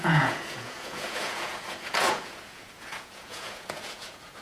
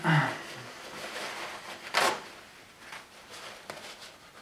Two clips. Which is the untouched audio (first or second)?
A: second